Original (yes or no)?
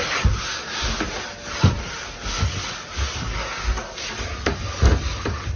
yes